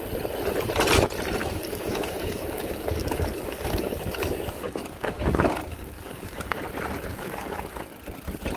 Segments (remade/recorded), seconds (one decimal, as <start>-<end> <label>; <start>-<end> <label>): 0.0-1.4 recorded; 1.4-6.6 remade; 6.6-7.1 recorded; 7.1-7.9 remade; 7.9-8.6 recorded